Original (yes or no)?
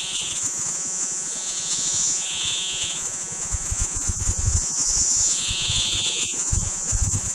no